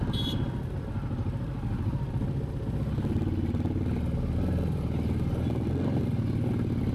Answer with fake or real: real